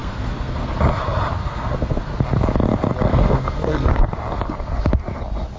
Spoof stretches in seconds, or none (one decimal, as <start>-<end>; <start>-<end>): 0.0-0.7; 1.4-2.1; 3.1-4.0